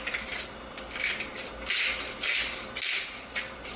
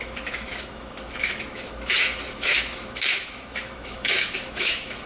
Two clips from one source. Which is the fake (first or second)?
second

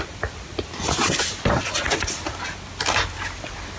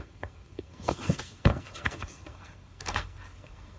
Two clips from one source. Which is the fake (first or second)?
second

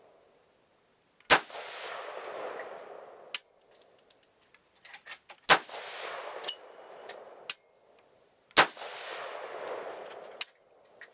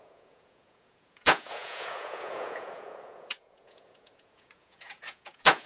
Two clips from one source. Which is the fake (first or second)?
second